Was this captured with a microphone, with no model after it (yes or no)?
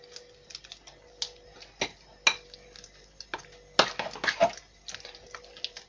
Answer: yes